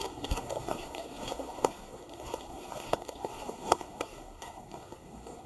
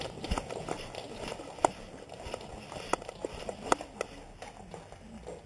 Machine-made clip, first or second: first